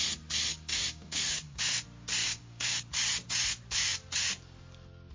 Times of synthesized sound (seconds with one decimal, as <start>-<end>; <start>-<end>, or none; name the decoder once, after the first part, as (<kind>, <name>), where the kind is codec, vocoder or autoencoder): 0.5-1.6 (codec, DAC); 2.2-2.8